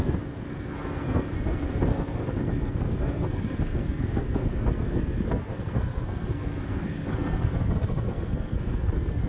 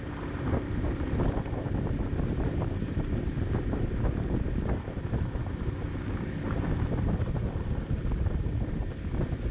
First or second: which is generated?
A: first